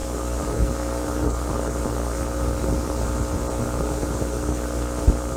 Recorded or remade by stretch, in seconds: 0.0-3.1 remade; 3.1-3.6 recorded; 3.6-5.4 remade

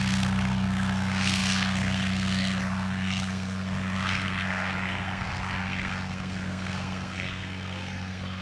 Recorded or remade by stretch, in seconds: 0.0-8.4 remade